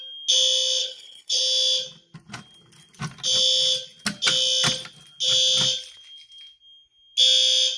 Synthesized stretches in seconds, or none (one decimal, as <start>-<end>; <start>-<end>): 0.8-1.4